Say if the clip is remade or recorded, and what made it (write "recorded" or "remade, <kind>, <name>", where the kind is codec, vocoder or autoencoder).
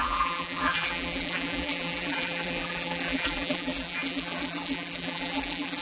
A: remade, vocoder, BigVGAN v2